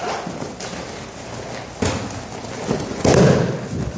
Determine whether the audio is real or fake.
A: real